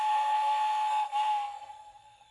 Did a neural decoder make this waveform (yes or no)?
yes